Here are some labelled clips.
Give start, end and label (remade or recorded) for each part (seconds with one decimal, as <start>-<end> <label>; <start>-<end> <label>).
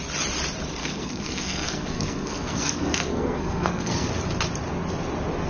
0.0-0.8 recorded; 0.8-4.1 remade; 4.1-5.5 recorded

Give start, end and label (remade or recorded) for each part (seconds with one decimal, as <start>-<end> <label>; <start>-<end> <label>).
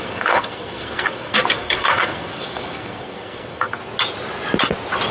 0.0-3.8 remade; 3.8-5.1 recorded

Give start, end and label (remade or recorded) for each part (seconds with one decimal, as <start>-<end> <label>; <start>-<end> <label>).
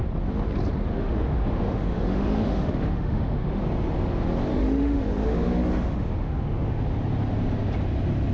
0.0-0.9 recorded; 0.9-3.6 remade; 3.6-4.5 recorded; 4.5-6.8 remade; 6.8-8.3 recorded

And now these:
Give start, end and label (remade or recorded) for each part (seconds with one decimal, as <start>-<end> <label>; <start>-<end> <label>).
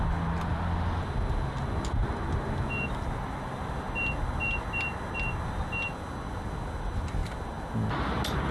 0.0-8.5 recorded